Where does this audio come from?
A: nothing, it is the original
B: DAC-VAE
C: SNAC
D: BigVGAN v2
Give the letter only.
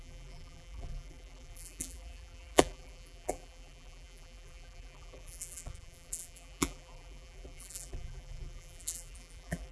D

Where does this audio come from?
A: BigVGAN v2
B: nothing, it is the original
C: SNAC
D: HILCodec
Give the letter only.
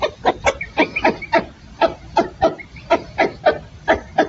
B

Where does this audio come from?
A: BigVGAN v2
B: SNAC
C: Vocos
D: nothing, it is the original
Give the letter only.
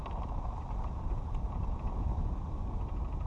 D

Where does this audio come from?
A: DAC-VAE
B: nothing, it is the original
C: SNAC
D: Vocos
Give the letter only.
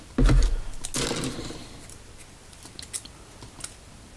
B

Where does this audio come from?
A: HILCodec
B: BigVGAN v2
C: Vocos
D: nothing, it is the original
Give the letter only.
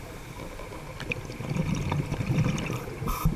B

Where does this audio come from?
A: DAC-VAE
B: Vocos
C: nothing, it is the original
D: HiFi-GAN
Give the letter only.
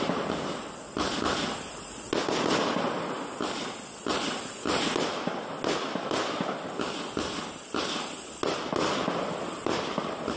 C